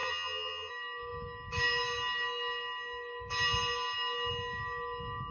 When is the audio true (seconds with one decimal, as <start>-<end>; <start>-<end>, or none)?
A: 0.7-5.3